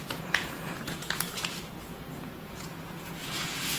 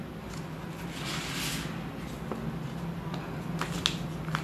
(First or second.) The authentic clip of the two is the second